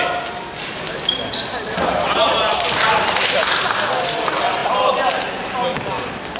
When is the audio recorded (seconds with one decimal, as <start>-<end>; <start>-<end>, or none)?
0.0-6.4